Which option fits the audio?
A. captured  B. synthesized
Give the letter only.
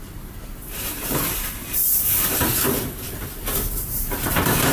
B